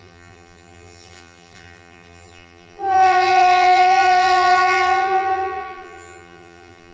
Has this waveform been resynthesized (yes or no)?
yes